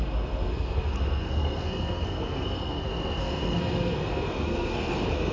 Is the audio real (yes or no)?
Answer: no